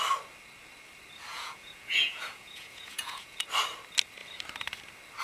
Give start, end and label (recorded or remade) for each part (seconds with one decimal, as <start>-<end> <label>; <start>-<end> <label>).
0.0-1.3 recorded; 1.3-3.4 remade; 3.4-5.2 recorded